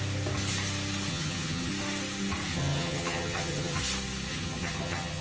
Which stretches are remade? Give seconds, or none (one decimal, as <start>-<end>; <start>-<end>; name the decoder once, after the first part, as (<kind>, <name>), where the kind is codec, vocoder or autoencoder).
1.1-1.7 (vocoder, HiFi-GAN); 2.5-3.8; 4.3-5.2